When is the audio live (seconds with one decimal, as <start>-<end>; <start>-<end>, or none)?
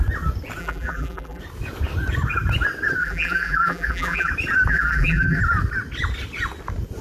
0.0-0.6; 1.4-3.0; 4.3-4.7; 5.4-7.0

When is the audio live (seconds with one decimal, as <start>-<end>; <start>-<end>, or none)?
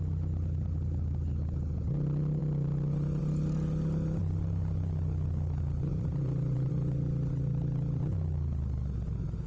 0.0-5.9; 6.7-9.5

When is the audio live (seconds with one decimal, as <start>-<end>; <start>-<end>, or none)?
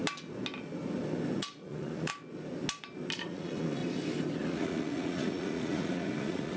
0.0-1.4; 2.1-3.2; 3.8-4.4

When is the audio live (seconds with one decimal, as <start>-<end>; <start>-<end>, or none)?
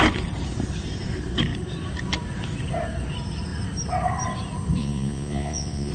0.0-4.8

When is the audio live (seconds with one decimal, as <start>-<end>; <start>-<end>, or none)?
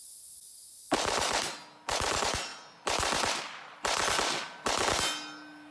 0.0-5.7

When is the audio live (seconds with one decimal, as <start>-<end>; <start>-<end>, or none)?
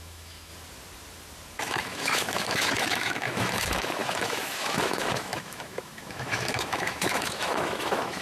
0.5-1.6